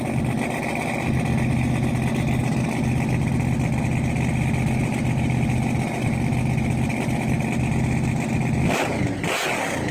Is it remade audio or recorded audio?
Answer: recorded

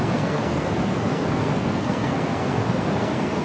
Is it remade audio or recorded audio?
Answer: remade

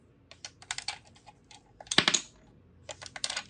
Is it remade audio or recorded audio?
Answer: recorded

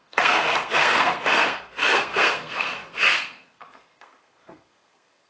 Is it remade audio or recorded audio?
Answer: remade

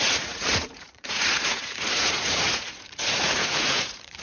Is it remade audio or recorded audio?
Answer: remade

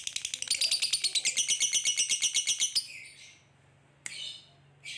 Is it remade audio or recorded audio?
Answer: recorded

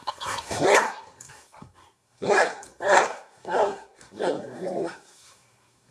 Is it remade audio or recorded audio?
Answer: remade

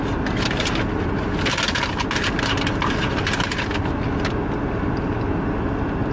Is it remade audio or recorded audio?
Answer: recorded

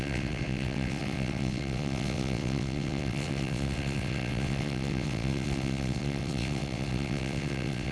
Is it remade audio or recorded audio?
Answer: remade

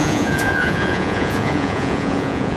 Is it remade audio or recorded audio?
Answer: remade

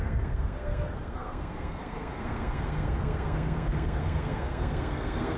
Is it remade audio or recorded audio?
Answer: remade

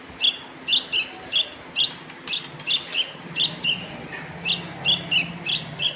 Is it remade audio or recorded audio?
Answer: recorded